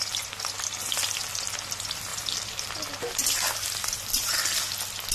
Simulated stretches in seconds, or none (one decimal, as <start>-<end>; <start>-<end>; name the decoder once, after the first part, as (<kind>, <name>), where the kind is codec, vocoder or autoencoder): none